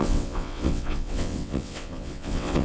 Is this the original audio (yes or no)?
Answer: no